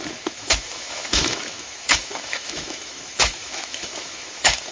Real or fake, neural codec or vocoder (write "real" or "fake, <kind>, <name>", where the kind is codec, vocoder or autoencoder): fake, autoencoder, DAC-VAE